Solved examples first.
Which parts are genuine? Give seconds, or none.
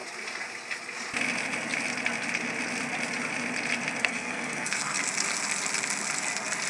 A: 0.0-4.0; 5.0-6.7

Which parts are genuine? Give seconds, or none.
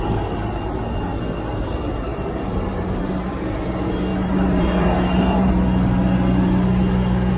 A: 0.0-2.1; 3.2-4.1; 5.5-7.4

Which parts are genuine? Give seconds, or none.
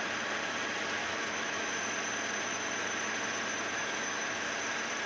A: 0.0-1.0; 1.7-3.8; 4.5-5.1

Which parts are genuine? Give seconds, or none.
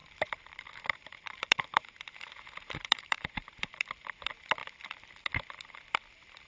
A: 3.9-6.5